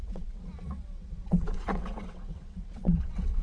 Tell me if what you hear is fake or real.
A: fake